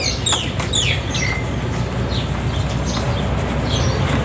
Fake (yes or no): no